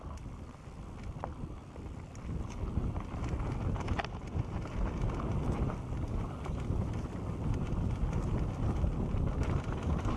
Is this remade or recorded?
recorded